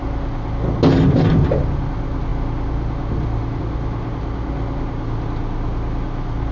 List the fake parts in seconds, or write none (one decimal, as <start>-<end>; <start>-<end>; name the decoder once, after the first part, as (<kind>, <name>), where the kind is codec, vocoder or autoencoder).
none